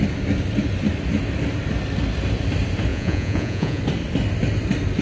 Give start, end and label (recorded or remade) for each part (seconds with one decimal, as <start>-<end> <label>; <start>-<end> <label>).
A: 0.0-2.9 recorded; 2.9-3.8 remade; 3.8-5.0 recorded